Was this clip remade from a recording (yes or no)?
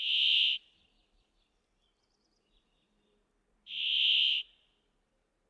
yes